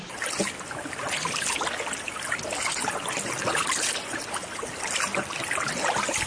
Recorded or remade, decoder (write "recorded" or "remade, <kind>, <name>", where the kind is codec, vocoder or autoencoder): recorded